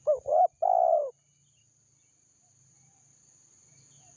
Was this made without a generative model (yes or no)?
yes